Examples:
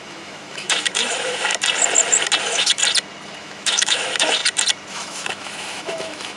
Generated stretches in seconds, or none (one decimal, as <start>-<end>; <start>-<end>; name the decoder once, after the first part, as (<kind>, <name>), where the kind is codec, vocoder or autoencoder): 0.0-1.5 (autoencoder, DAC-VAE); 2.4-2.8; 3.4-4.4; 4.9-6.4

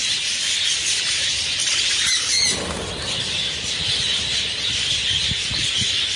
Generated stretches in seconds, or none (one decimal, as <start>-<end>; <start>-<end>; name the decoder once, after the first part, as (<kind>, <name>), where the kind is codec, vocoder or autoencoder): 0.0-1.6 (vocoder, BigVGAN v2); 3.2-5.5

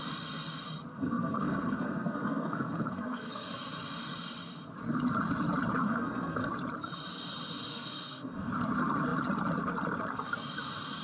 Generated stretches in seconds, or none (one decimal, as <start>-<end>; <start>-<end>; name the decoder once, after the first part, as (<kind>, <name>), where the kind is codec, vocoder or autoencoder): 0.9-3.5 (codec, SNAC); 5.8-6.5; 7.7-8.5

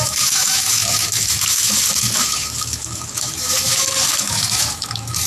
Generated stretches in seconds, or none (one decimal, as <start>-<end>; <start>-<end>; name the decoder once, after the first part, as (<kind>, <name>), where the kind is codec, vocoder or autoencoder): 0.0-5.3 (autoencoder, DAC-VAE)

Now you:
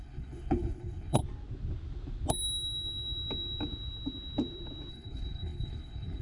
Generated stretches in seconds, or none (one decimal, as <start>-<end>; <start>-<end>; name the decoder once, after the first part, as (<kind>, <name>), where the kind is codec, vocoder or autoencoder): 0.0-1.2 (codec, HILCodec); 4.9-6.2

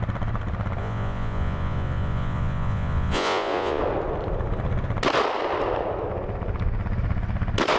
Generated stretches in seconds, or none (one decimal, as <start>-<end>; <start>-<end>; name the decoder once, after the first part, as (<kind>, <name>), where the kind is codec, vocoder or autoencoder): 0.8-3.8 (vocoder, Vocos)